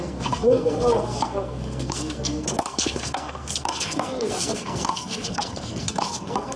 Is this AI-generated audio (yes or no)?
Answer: yes